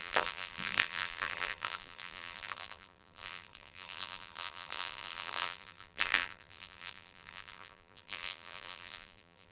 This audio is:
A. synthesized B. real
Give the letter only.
A